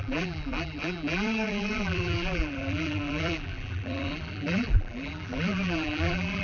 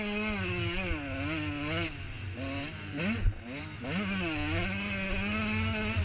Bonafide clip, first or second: second